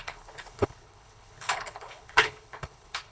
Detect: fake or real fake